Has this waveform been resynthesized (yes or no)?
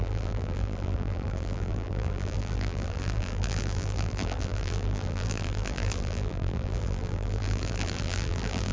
yes